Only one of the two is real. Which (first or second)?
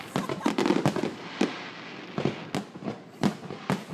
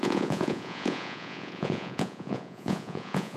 first